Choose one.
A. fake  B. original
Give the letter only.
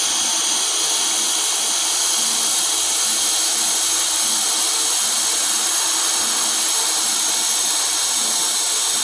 B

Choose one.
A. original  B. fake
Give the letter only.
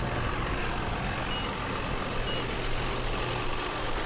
A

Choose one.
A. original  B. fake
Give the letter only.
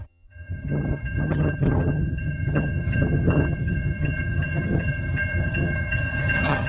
B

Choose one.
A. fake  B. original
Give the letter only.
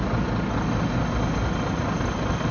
B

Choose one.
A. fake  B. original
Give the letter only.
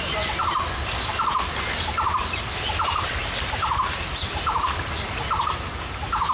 B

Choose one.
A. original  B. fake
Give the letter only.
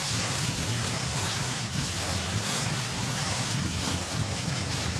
B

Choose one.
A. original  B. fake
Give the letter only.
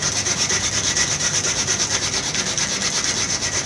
A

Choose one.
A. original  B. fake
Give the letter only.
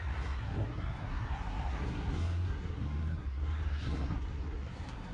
B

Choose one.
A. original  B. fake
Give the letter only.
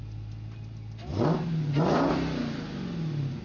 A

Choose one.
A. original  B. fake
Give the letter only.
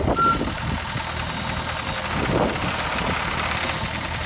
A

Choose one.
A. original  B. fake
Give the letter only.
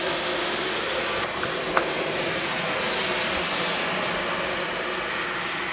A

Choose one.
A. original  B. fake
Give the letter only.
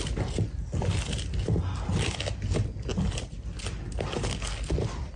A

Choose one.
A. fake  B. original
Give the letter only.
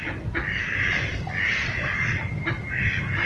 B